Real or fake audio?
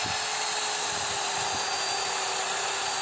real